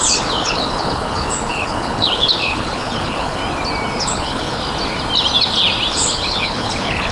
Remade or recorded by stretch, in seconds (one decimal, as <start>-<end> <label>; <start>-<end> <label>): 0.0-3.4 remade; 3.4-4.0 recorded; 4.0-4.6 remade; 4.6-5.9 recorded; 5.9-7.1 remade

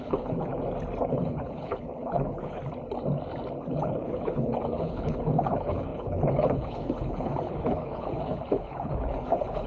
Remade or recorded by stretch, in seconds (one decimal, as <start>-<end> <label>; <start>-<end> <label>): 0.0-0.5 remade; 0.5-1.1 recorded; 1.1-2.6 remade; 2.6-3.7 recorded; 3.7-9.7 remade